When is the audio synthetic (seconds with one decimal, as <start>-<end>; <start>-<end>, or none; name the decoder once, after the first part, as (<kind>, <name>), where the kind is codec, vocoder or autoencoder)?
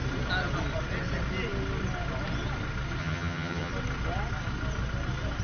3.0-3.7 (vocoder, HiFi-GAN)